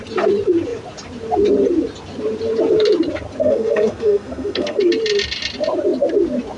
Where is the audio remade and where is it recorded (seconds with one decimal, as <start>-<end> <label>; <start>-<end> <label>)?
0.0-3.4 recorded; 3.4-4.9 remade; 4.9-6.6 recorded